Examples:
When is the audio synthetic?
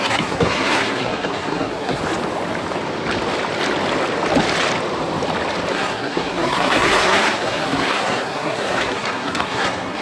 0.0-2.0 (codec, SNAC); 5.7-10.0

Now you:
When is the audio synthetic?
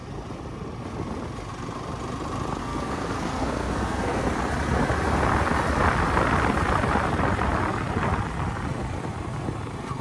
2.6-4.2 (codec, SNAC)